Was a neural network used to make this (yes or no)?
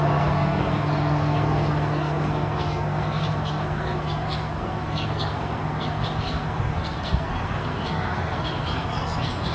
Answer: yes